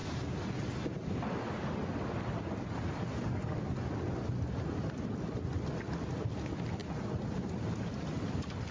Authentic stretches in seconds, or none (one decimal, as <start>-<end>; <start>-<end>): 0.0-8.7